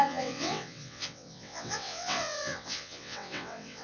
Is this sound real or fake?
fake